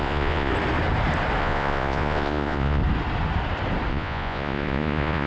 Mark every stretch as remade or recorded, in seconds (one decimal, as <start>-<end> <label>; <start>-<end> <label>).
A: 0.0-0.5 remade; 0.5-1.4 recorded; 1.4-2.8 remade; 2.8-3.9 recorded; 3.9-5.3 remade